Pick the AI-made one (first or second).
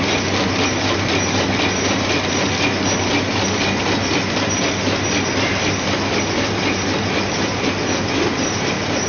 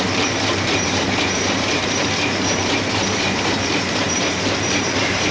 second